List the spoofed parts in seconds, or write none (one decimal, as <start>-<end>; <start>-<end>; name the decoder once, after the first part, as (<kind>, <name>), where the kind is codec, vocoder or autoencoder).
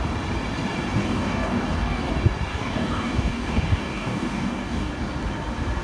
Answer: 1.0-2.1 (codec, DAC); 2.5-4.9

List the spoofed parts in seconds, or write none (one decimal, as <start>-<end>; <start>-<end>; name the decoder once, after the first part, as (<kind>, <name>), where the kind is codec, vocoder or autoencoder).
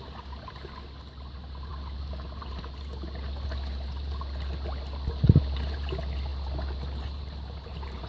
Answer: 1.7-2.6 (vocoder, BigVGAN v2); 6.3-8.1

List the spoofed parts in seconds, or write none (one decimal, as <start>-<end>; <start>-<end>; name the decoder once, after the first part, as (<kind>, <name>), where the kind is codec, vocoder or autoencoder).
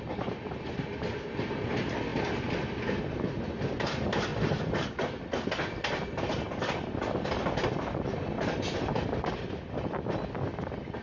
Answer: none